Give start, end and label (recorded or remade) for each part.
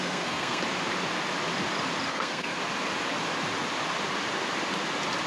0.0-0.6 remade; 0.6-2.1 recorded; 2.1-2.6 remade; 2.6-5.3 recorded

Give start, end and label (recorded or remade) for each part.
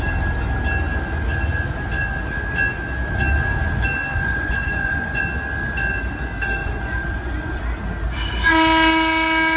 0.0-4.1 recorded; 4.1-5.2 remade; 5.2-6.6 recorded; 6.6-7.6 remade; 7.6-9.6 recorded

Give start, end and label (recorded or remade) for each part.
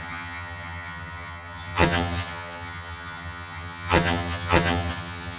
0.0-5.4 remade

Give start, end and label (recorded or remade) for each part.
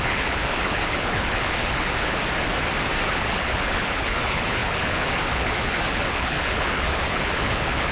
0.0-2.2 remade; 2.2-3.1 recorded; 3.1-7.9 remade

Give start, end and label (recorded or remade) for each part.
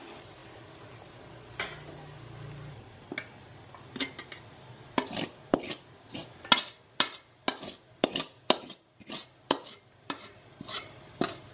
0.0-11.5 recorded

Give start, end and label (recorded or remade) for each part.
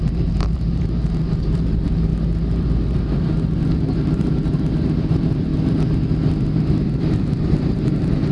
0.0-2.1 remade; 2.1-3.7 recorded; 3.7-5.5 remade; 5.5-6.9 recorded; 6.9-8.3 remade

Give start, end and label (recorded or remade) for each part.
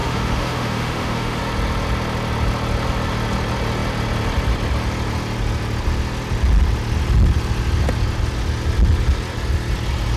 0.0-1.4 remade; 1.4-10.2 recorded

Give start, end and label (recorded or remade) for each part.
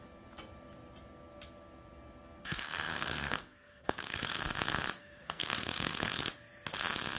0.0-2.4 recorded; 2.4-4.4 remade; 4.4-5.0 recorded; 5.0-6.2 remade; 6.2-7.2 recorded